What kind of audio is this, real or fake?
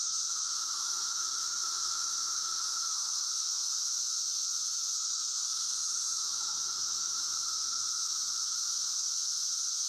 fake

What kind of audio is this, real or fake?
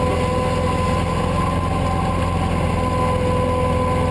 real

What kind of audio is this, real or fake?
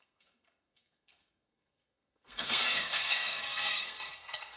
fake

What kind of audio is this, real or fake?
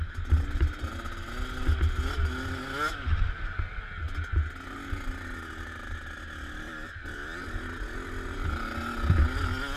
real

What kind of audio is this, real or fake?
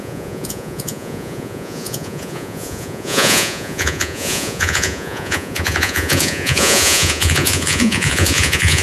fake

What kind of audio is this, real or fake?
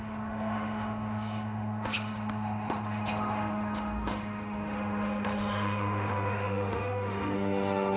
fake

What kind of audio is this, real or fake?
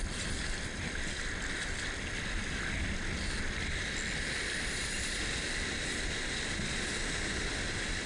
real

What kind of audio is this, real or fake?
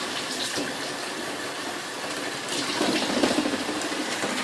real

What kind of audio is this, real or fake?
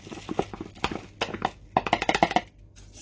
real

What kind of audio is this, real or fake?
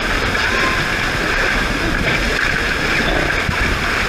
real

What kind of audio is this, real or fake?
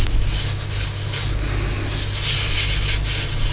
real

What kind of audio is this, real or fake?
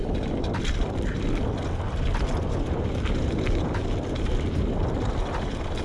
real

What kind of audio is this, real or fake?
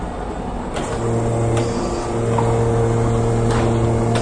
real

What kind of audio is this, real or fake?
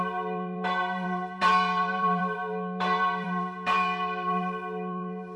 fake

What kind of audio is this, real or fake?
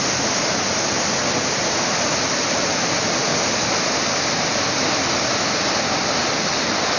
real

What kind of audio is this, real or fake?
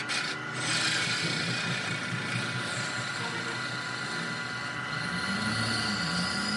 real